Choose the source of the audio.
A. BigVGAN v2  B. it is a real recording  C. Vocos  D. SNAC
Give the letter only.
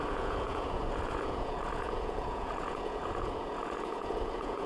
C